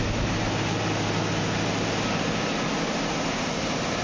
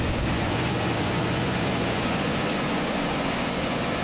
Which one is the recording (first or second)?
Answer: first